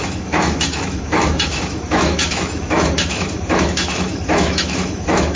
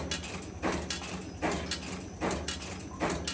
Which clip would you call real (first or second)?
second